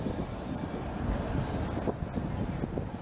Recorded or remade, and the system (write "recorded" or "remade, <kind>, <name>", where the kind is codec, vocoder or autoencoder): recorded